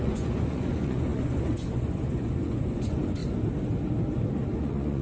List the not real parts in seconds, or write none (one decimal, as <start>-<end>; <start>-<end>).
0.0-3.2; 4.3-5.0